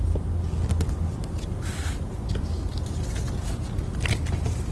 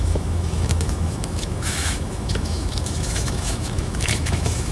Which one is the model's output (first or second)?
second